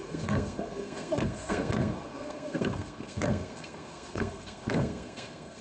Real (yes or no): no